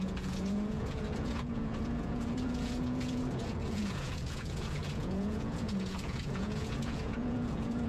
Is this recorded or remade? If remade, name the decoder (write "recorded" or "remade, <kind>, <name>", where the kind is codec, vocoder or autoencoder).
remade, vocoder, Vocos